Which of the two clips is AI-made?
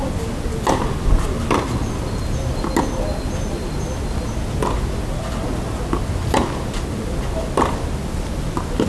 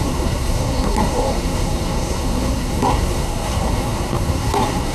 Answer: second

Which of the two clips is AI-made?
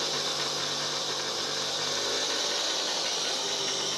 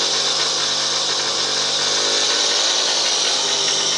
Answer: first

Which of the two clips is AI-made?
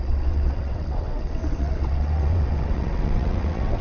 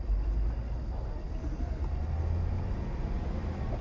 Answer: first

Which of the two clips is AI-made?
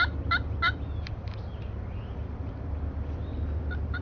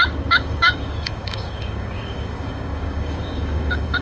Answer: second